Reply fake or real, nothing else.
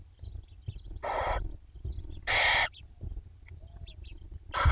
real